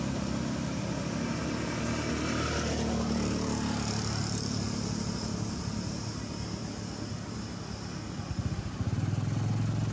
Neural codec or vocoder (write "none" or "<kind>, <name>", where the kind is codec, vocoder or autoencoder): none